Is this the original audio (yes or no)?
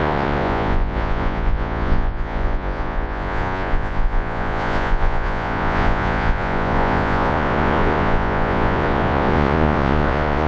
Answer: no